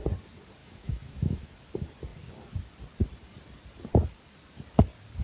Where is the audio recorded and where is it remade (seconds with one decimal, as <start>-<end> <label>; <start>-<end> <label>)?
0.0-0.6 recorded; 0.6-1.5 remade; 1.5-5.2 recorded